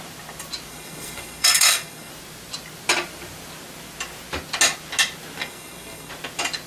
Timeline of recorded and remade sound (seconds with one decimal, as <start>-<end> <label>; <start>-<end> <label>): 0.0-0.7 recorded; 0.7-2.1 remade; 2.1-5.4 recorded; 5.4-6.1 remade; 6.1-6.7 recorded